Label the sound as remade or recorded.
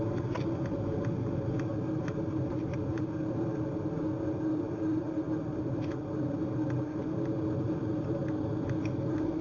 recorded